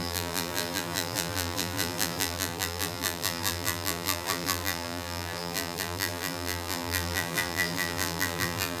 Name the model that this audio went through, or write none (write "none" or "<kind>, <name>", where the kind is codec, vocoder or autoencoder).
vocoder, BigVGAN v2